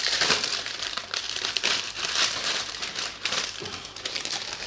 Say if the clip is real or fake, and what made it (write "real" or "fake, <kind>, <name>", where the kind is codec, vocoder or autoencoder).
fake, vocoder, BigVGAN v2